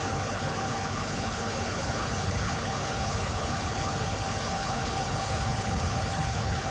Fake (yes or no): yes